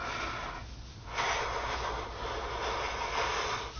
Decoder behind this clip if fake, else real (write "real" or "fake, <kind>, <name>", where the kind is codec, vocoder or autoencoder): real